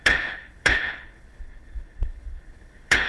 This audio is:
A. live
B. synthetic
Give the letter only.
B